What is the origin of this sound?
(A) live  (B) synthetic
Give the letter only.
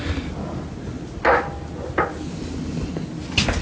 A